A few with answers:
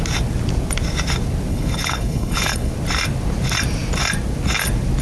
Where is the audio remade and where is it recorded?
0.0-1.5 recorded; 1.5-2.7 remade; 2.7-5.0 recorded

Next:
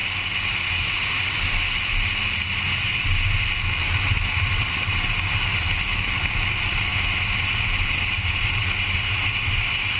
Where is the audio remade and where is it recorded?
0.0-10.0 recorded

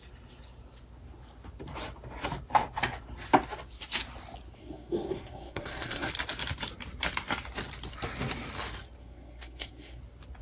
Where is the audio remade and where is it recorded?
0.0-4.6 recorded; 4.6-6.1 remade; 6.1-9.0 recorded; 9.0-10.0 remade; 10.0-10.4 recorded

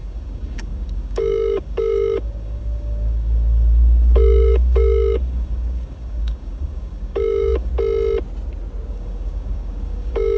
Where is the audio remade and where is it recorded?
0.0-7.7 remade; 7.7-8.9 recorded; 8.9-10.4 remade

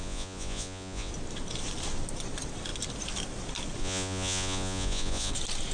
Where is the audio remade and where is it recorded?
0.0-1.1 remade; 1.1-3.8 recorded; 3.8-5.3 remade; 5.3-5.7 recorded

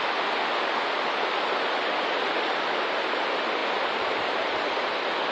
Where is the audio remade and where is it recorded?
0.0-5.3 recorded

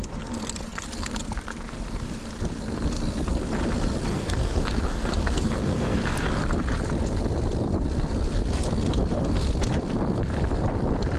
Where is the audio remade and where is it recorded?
0.0-4.1 recorded; 4.1-6.3 remade; 6.3-11.2 recorded

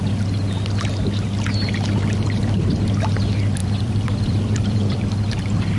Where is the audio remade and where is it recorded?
0.0-3.6 recorded; 3.6-5.0 remade; 5.0-5.8 recorded